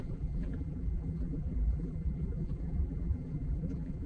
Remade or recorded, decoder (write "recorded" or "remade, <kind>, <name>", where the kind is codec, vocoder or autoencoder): remade, vocoder, BigVGAN v2